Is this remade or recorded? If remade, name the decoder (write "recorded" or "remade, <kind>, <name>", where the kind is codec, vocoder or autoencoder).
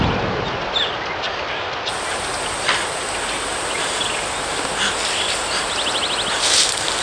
recorded